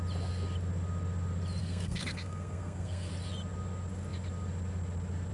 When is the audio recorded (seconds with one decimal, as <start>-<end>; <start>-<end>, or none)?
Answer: 0.0-1.6; 3.1-5.3